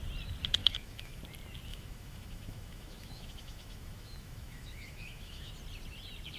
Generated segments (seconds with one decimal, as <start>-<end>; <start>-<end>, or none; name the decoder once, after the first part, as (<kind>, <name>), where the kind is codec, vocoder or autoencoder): 0.6-1.2 (autoencoder, DAC-VAE); 1.7-5.5